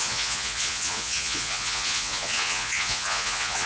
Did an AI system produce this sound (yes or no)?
yes